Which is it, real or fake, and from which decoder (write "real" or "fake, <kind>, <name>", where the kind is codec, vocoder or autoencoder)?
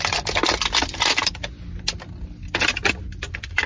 real